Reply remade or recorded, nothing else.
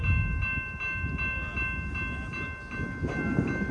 recorded